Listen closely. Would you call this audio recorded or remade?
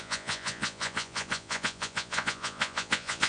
remade